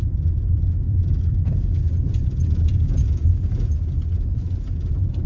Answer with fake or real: fake